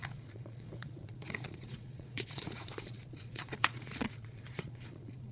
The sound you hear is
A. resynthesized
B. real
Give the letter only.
A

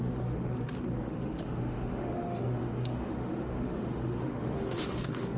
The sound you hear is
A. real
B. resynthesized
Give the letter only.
B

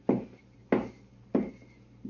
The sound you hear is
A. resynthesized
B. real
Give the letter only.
B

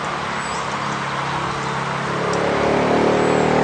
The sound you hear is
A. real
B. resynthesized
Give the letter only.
A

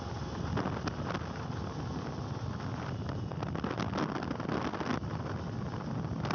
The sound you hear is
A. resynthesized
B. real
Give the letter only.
B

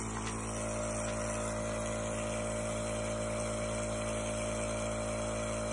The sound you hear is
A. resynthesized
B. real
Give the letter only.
B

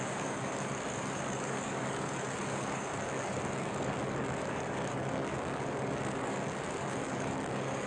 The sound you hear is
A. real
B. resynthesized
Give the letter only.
B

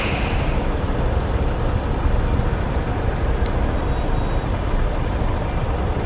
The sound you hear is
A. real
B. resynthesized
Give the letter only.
A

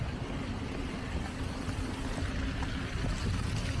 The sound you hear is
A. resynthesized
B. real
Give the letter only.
B